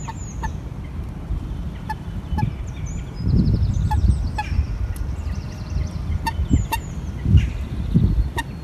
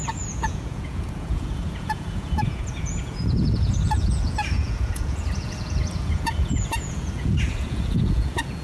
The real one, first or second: first